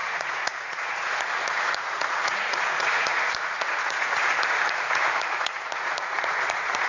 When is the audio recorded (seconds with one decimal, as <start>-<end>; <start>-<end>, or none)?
none